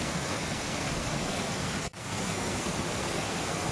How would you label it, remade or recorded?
remade